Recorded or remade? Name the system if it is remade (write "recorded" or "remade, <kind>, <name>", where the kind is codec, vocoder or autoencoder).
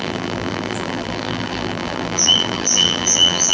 remade, vocoder, BigVGAN v2